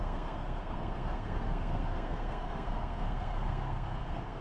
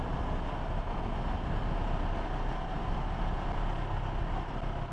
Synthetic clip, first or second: first